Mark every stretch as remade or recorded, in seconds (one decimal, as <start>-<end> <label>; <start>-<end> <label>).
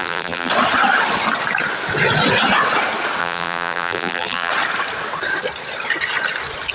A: 0.0-0.5 remade; 0.5-3.2 recorded; 3.2-4.5 remade; 4.5-6.7 recorded